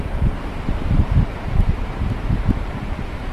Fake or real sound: fake